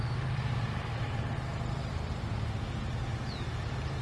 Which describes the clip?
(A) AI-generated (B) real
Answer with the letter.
A